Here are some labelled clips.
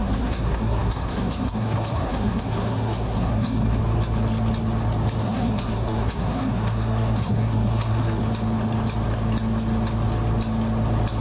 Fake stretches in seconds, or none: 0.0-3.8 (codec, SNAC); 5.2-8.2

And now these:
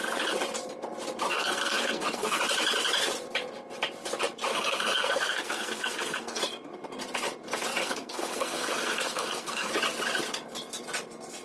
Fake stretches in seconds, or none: 1.3-2.4 (codec, SNAC); 4.5-6.4; 7.8-9.7

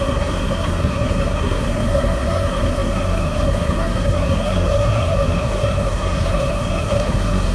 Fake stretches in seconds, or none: 0.0-7.5 (codec, SNAC)

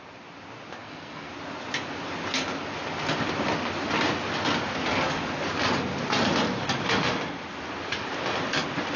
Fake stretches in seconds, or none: 0.8-1.3 (codec, SNAC)

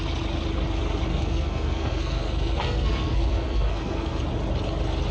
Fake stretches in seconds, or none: 1.1-4.2 (codec, SNAC)

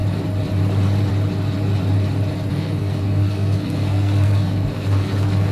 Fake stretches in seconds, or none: 2.5-5.5 (codec, SNAC)

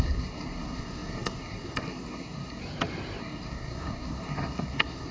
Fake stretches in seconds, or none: 0.0-2.6 (codec, SNAC); 3.2-5.1